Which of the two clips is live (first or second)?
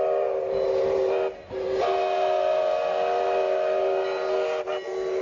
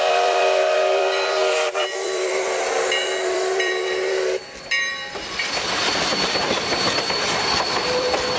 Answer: first